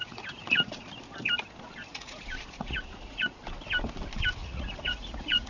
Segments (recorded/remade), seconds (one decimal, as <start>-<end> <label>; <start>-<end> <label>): 0.0-0.8 remade; 0.8-1.9 recorded; 1.9-3.4 remade; 3.4-4.4 recorded; 4.4-5.5 remade

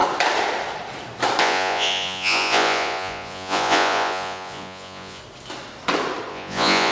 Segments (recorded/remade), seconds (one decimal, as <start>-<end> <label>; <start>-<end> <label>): 0.0-1.4 recorded; 1.4-5.2 remade; 5.2-6.3 recorded; 6.3-6.9 remade

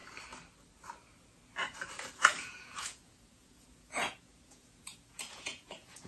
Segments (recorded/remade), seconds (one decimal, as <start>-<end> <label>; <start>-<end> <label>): 0.0-2.1 recorded; 2.1-6.1 remade

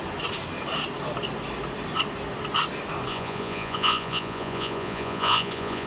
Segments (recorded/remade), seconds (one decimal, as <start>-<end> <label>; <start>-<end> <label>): 0.0-3.1 recorded; 3.1-5.9 remade

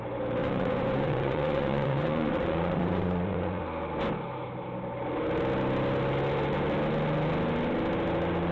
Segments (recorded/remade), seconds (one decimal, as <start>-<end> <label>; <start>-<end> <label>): 0.0-0.4 recorded; 0.4-3.6 remade; 3.6-8.5 recorded

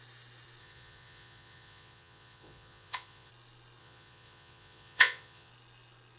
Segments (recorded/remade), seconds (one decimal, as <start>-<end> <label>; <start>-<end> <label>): 0.0-0.6 recorded; 0.6-3.3 remade; 3.3-3.8 recorded; 3.8-5.5 remade; 5.5-6.2 recorded

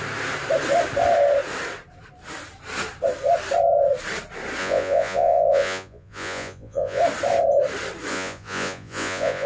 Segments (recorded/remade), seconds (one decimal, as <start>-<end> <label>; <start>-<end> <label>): 0.0-4.6 recorded; 4.6-7.0 remade; 7.0-8.1 recorded; 8.1-9.5 remade

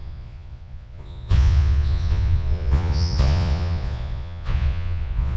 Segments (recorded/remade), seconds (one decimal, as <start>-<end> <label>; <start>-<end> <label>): 0.0-5.4 remade